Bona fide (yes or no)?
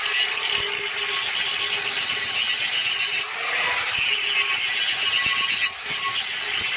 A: yes